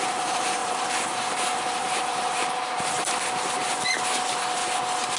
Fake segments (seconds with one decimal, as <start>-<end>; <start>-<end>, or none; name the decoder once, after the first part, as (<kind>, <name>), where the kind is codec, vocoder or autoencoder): 0.0-4.6 (vocoder, BigVGAN v2)